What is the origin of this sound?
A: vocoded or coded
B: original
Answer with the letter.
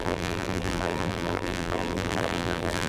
A